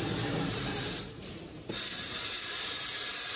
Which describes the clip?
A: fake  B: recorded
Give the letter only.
A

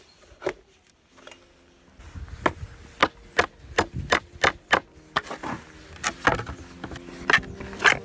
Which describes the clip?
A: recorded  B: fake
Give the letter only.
A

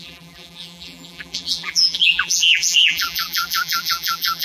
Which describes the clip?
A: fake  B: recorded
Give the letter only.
A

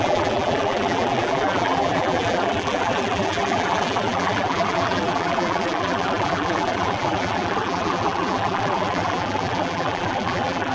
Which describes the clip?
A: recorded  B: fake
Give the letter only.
B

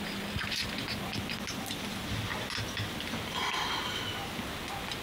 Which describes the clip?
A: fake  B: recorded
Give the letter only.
B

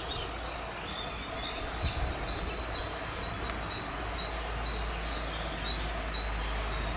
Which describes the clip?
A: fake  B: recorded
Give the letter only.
B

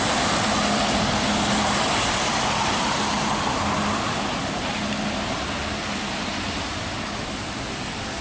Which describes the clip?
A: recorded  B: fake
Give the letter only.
A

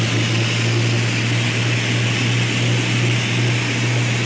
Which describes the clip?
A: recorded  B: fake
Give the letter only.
A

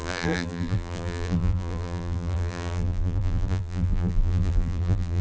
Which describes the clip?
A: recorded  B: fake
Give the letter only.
B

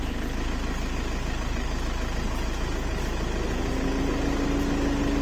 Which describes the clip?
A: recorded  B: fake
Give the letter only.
A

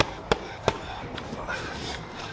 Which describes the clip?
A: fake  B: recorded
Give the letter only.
A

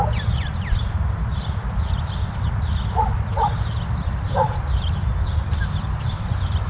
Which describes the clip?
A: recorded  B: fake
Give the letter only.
B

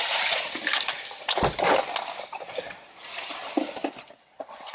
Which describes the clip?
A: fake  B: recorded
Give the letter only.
A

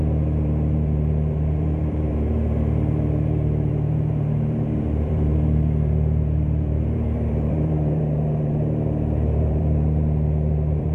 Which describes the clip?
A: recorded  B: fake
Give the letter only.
B